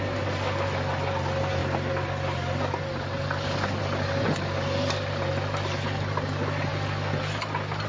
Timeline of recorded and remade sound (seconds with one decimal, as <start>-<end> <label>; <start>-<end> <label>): 0.0-7.9 recorded